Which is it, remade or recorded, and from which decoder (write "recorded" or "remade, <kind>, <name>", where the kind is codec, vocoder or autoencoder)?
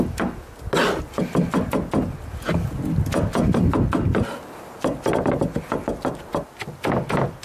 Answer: recorded